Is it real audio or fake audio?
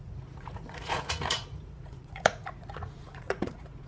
fake